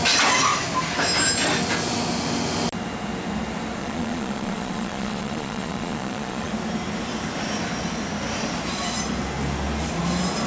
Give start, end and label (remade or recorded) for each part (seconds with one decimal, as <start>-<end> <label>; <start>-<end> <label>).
0.0-3.8 recorded; 3.8-6.5 remade; 6.5-10.5 recorded